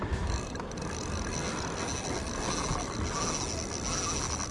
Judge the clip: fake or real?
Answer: real